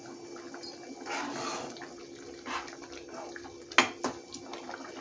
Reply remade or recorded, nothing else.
recorded